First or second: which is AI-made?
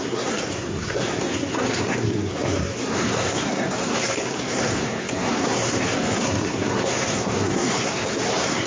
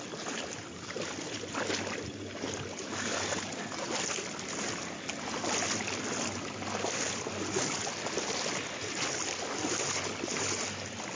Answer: first